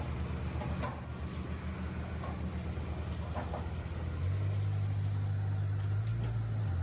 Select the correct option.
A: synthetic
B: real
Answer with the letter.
B